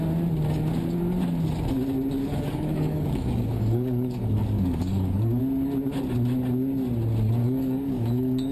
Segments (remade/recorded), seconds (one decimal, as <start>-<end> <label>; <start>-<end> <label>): 0.0-2.2 recorded; 2.2-5.4 remade; 5.4-7.4 recorded; 7.4-8.5 remade